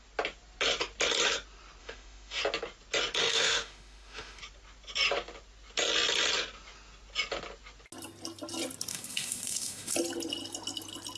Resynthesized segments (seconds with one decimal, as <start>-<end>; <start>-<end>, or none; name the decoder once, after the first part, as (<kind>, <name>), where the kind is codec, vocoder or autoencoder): 1.8-2.4 (autoencoder, DAC-VAE); 3.2-4.4; 8.9-9.9